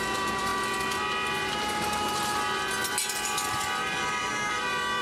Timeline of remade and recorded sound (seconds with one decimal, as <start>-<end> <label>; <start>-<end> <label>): 0.0-0.5 remade; 0.5-3.5 recorded; 3.5-5.0 remade